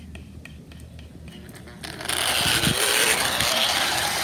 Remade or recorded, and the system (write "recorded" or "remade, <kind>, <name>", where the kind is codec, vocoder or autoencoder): recorded